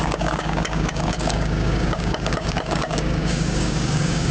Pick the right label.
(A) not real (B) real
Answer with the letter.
A